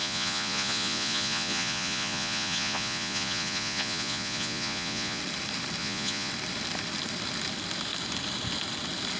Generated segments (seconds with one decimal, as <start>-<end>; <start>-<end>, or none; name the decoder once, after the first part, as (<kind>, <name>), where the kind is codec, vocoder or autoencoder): 0.0-5.2 (vocoder, Vocos); 5.8-6.3